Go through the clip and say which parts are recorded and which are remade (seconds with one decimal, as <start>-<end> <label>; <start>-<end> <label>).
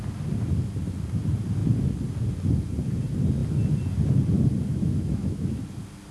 0.0-4.7 recorded; 4.7-5.6 remade; 5.6-6.1 recorded